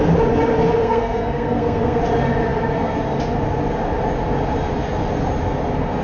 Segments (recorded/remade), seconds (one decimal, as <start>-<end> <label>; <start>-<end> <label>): 0.0-0.8 recorded; 0.8-2.0 remade; 2.0-6.0 recorded